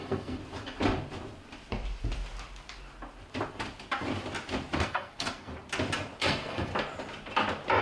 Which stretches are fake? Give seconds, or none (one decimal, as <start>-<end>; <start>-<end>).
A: 0.0-0.4; 4.8-5.5; 6.2-6.7